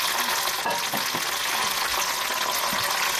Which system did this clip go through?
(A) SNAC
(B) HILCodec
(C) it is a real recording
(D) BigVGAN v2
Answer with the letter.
C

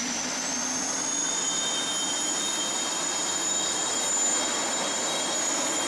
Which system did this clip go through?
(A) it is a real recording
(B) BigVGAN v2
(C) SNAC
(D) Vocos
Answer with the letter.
A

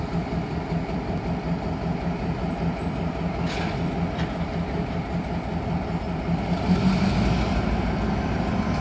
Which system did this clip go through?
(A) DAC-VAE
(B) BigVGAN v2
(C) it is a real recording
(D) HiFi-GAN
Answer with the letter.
B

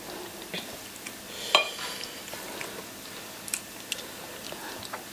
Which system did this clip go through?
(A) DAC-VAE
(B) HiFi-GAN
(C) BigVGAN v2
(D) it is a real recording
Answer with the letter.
D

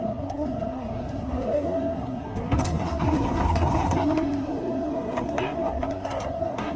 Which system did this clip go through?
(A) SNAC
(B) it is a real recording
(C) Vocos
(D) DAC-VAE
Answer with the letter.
A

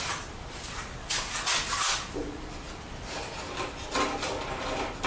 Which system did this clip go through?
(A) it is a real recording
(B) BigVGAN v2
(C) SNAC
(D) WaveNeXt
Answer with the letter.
A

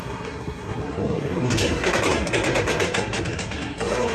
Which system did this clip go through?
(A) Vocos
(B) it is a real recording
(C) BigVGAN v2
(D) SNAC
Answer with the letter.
D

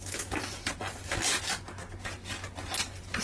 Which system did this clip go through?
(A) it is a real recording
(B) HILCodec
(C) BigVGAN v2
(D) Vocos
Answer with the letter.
A